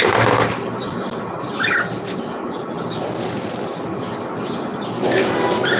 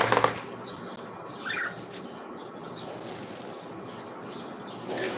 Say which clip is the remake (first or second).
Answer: first